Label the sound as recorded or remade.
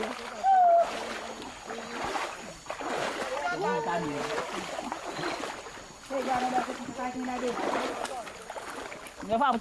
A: recorded